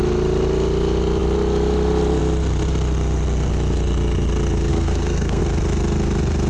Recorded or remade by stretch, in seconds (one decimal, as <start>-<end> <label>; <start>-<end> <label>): 0.0-4.7 recorded; 4.7-5.4 remade; 5.4-6.5 recorded